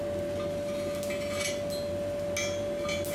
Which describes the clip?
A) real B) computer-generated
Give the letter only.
A